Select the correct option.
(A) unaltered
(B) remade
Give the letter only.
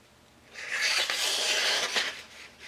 B